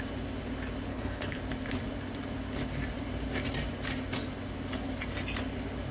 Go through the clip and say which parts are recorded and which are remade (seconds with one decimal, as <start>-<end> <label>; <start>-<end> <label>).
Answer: 0.0-0.9 recorded; 0.9-1.4 remade; 1.4-5.9 recorded